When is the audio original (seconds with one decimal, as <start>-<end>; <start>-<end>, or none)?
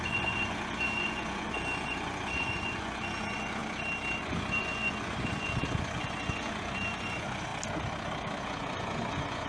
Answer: 3.6-4.2; 7.5-8.4